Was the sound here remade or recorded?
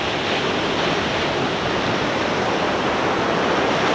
recorded